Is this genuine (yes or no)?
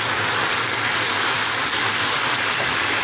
yes